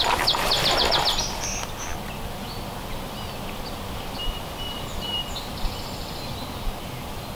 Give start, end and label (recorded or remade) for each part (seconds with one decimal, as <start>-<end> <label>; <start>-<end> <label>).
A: 0.0-7.4 recorded